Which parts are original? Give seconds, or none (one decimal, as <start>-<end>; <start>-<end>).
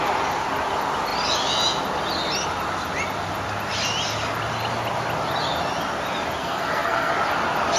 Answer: 0.0-6.4; 7.1-7.8